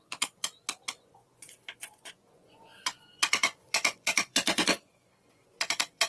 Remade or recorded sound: remade